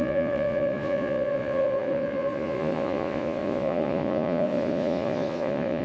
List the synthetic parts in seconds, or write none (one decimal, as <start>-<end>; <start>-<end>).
0.0-5.8